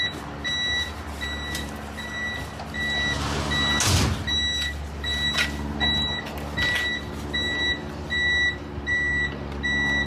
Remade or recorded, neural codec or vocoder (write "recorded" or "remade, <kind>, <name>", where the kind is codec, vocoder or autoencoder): recorded